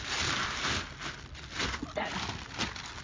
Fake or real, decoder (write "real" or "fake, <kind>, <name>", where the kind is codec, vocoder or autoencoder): real